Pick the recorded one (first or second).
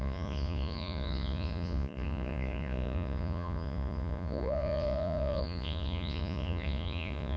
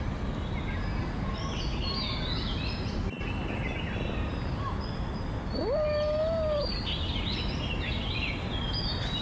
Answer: second